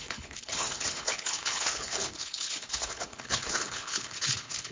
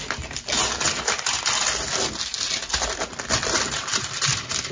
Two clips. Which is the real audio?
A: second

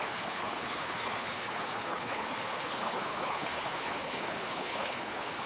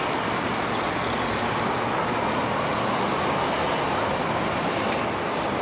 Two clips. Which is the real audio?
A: second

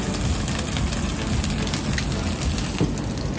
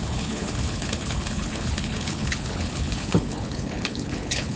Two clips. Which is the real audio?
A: first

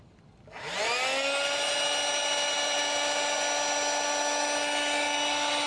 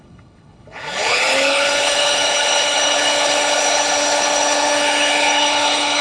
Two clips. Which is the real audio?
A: first